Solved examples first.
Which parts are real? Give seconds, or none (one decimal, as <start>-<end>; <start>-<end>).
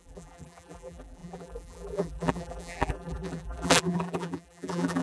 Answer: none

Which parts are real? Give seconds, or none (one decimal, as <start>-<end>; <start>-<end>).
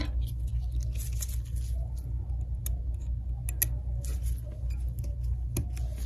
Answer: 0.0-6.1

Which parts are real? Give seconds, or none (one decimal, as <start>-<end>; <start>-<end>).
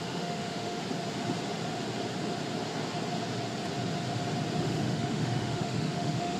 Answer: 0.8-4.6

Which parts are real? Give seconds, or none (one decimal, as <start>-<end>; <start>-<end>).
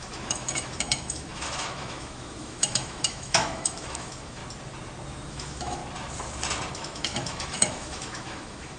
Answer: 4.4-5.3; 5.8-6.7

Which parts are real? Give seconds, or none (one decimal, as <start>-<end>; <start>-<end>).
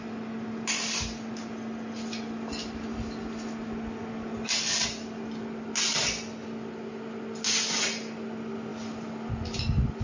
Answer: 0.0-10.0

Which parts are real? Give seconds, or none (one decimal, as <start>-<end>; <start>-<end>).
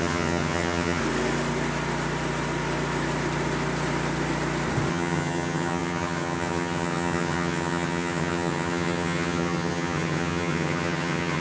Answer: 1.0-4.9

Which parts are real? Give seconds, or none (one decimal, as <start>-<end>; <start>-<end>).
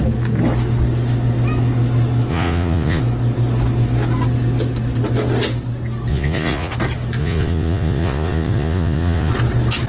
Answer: 0.0-2.3; 3.0-6.1; 6.7-7.2; 9.3-9.9